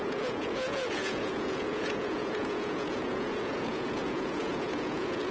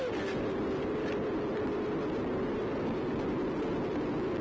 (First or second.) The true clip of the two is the second